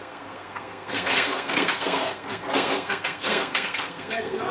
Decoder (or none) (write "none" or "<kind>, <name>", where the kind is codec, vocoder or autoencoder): codec, SNAC